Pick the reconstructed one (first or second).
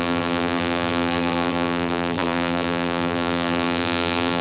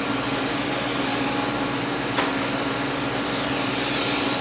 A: first